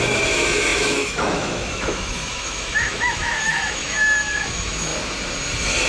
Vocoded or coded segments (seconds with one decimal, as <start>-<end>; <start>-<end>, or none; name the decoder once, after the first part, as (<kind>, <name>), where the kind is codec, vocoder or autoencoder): 0.0-4.9 (autoencoder, DAC-VAE)